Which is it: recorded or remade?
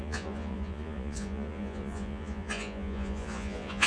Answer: remade